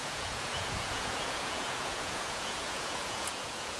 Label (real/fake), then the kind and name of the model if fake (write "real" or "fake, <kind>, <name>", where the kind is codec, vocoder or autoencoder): fake, vocoder, Vocos